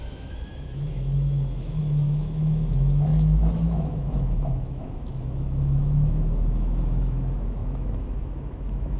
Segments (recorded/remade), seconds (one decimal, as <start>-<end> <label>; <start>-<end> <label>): 0.0-9.0 remade